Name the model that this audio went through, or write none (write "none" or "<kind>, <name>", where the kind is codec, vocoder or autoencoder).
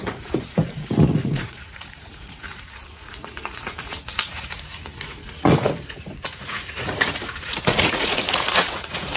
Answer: vocoder, Vocos